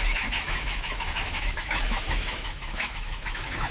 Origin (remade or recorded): remade